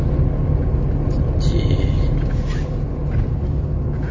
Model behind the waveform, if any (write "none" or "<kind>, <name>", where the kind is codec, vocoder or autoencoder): none